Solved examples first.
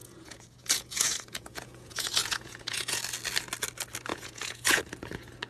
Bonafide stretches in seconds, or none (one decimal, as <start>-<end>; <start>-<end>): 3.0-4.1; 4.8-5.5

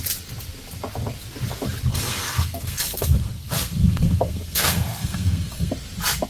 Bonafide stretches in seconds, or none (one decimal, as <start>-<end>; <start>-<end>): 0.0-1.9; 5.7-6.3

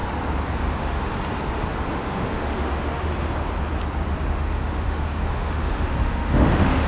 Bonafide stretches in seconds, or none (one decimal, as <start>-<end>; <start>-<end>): 0.0-0.6; 1.1-1.9; 3.1-4.3